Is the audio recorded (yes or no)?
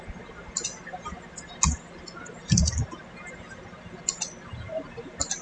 yes